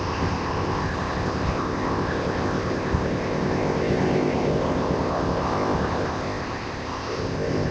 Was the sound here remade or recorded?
remade